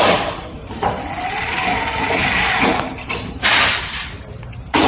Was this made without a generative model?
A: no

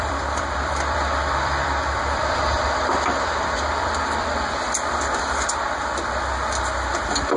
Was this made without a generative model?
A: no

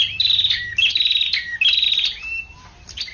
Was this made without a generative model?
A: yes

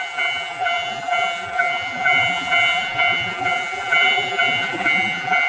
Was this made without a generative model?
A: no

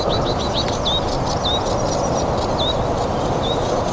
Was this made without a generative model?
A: yes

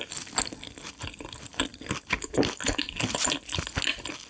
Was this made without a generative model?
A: yes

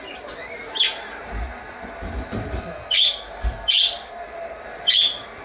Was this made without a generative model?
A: yes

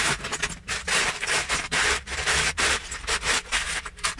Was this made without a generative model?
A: no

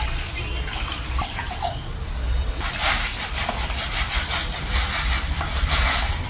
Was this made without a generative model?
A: no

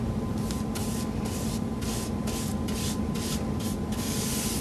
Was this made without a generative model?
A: yes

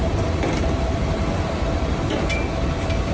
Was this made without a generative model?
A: no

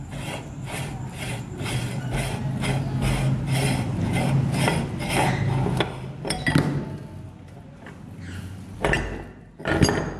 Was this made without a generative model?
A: yes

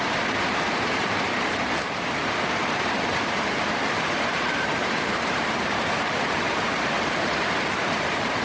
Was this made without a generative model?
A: no